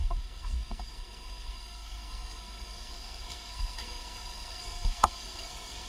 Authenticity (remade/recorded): remade